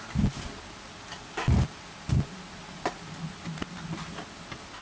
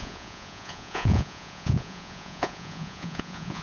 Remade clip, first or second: second